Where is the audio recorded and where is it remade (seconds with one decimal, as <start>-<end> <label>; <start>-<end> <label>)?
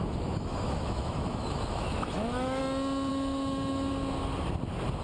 0.0-2.6 remade; 2.6-3.1 recorded; 3.1-3.9 remade; 3.9-5.0 recorded